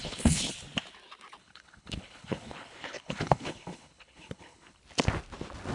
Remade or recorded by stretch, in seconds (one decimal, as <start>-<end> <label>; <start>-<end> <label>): 0.0-0.5 remade; 0.5-1.4 recorded; 1.4-4.8 remade; 4.8-5.7 recorded